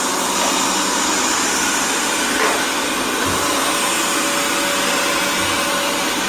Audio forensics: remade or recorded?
recorded